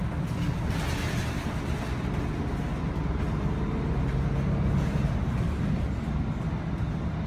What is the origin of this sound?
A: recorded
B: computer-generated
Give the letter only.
A